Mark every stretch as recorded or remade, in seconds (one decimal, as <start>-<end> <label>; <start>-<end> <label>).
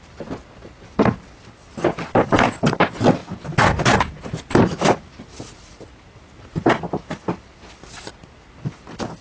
0.0-9.2 recorded